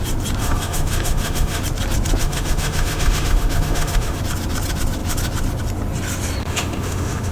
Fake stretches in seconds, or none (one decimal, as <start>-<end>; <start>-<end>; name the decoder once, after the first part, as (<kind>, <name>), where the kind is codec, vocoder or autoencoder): 0.4-1.6 (autoencoder, DAC-VAE); 2.2-4.2; 6.4-7.3